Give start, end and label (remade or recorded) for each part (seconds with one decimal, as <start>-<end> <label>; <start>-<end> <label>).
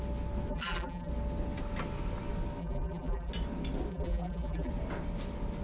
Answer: 0.0-0.5 recorded; 0.5-1.1 remade; 1.1-2.6 recorded; 2.6-3.3 remade; 3.3-3.9 recorded; 3.9-4.7 remade; 4.7-5.6 recorded